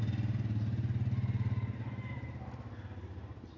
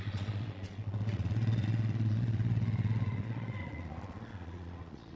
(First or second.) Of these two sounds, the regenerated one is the second